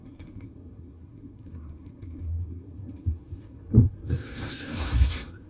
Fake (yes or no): yes